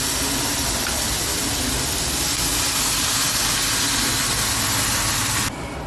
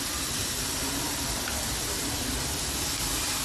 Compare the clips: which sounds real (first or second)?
first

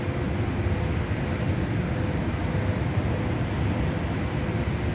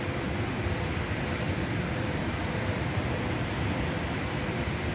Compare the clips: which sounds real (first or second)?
first